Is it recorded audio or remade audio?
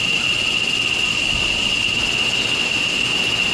recorded